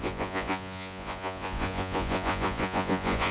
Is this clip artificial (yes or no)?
yes